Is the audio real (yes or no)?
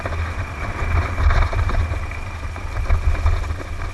yes